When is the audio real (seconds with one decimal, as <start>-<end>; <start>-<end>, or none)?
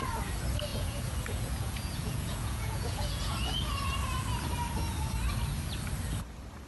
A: 0.0-0.7; 3.6-6.7